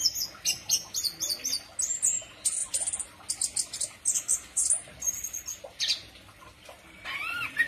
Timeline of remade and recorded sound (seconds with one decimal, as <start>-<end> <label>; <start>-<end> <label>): 0.0-7.7 recorded